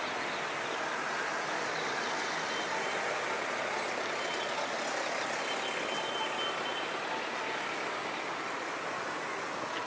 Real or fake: real